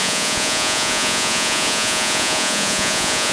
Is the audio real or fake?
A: fake